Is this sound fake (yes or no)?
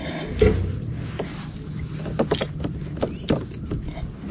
no